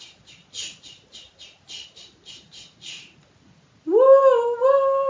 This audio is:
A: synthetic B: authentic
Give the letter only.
B